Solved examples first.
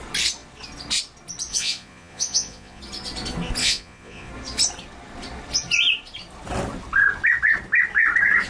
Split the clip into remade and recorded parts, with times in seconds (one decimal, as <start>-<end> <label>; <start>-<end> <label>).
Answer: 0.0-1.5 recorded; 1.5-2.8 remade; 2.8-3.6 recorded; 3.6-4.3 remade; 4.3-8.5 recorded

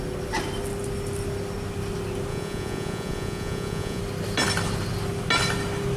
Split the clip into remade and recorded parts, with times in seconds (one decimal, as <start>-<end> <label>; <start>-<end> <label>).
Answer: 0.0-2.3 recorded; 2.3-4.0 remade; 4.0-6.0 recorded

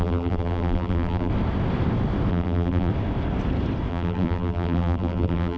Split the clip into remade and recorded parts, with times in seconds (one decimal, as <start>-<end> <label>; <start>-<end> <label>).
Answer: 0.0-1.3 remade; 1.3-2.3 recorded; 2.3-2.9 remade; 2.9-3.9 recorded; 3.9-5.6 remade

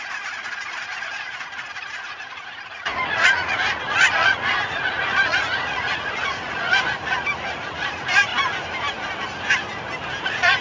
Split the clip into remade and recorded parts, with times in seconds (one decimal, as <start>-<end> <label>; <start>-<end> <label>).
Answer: 0.0-8.3 remade; 8.3-10.2 recorded; 10.2-10.6 remade

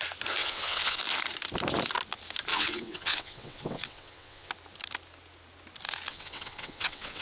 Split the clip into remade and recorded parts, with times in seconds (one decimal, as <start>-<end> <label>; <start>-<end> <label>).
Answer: 0.0-0.4 recorded; 0.4-1.0 remade; 1.0-2.5 recorded; 2.5-4.5 remade; 4.5-6.1 recorded; 6.1-7.2 remade